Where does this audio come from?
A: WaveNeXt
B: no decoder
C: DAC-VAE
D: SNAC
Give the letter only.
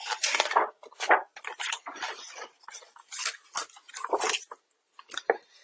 B